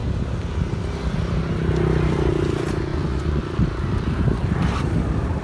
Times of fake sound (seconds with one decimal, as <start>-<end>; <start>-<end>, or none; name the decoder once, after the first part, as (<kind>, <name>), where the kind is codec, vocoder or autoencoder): 2.9-3.4 (vocoder, Vocos)